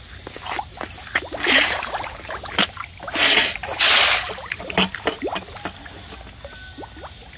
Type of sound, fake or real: real